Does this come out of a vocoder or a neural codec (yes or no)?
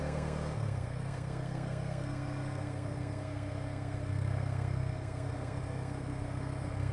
yes